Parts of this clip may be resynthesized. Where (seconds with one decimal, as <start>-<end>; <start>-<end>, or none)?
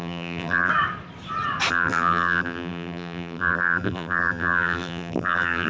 0.0-0.7; 1.7-5.7